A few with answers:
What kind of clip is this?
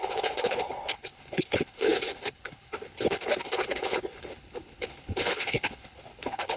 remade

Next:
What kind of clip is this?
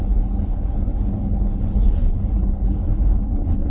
remade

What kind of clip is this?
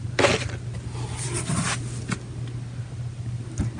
recorded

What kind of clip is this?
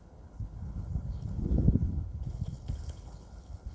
remade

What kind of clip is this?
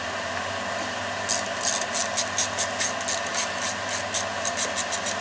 recorded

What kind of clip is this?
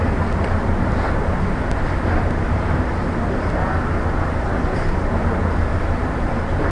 recorded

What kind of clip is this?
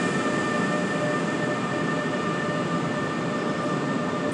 recorded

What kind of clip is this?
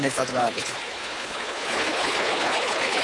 remade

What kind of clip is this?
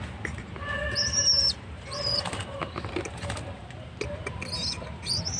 recorded